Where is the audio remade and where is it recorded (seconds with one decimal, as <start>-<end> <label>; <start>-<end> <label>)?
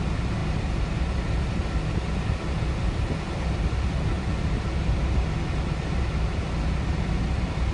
0.0-7.7 recorded